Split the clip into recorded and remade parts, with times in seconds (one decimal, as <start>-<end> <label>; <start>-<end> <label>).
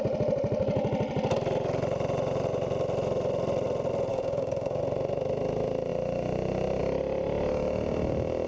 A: 0.0-4.1 recorded; 4.1-4.8 remade; 4.8-8.5 recorded